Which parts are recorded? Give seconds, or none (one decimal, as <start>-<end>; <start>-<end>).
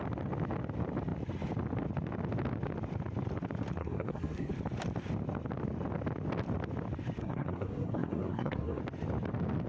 0.0-3.8; 4.5-7.2; 8.8-9.7